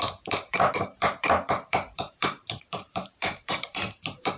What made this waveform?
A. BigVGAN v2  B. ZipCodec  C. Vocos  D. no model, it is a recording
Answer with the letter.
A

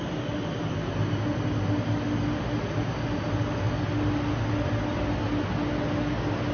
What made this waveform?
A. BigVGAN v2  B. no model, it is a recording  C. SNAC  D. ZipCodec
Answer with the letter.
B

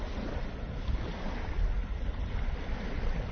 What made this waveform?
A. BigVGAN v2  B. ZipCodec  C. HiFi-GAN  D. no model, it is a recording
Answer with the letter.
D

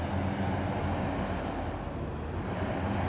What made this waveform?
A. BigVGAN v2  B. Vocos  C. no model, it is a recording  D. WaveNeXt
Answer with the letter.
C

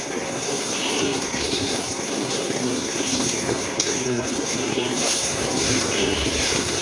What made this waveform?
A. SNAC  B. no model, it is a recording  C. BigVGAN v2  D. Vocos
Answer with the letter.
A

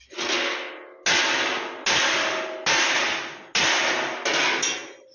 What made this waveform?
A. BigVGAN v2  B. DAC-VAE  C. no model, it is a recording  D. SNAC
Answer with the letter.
C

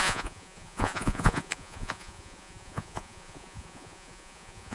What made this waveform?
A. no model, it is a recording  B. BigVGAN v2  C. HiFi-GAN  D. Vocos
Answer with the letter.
D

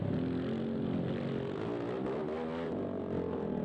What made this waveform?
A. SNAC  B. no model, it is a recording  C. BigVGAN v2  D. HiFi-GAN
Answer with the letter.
B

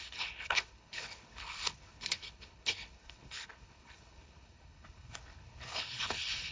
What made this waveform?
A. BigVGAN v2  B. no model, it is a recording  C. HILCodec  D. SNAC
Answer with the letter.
C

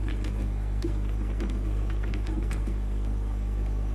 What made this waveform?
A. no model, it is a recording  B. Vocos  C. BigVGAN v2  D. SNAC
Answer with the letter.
D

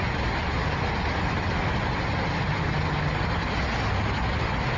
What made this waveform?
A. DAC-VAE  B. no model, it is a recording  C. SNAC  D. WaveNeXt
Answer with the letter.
B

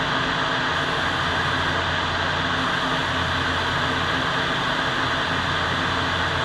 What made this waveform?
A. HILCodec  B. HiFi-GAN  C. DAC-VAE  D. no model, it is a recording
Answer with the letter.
D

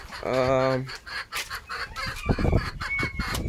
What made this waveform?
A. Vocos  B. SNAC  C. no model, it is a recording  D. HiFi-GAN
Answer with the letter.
C